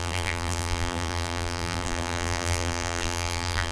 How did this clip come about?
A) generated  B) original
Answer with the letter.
A